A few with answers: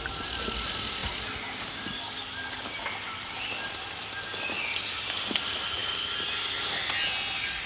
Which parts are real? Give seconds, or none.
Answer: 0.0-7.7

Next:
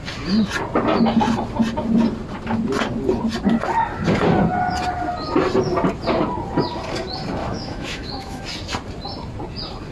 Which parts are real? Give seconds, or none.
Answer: 0.0-7.4; 8.4-9.9

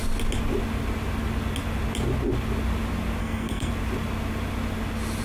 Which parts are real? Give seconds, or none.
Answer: 0.0-3.2; 3.7-5.2

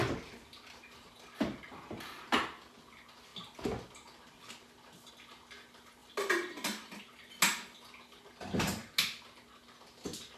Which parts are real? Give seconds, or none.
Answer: 0.0-10.4